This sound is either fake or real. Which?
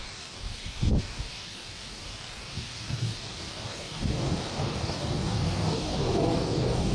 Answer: fake